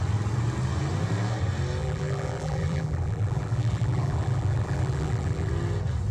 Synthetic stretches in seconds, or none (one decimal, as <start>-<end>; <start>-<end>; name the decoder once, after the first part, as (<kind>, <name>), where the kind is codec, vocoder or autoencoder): 1.8-5.5 (vocoder, BigVGAN v2)